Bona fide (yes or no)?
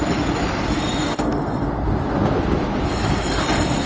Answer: yes